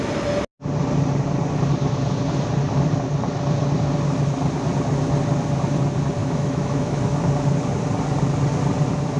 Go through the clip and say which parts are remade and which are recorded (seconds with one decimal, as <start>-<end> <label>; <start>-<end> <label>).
0.0-6.2 recorded; 6.2-7.0 remade; 7.0-9.2 recorded

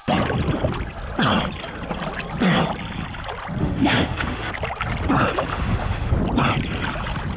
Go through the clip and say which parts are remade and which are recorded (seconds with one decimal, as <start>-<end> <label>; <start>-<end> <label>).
0.0-3.6 recorded; 3.6-4.5 remade; 4.5-5.5 recorded; 5.5-6.1 remade; 6.1-7.4 recorded

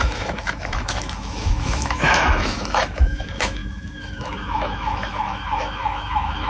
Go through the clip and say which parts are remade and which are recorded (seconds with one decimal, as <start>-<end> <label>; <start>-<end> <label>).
0.0-6.5 remade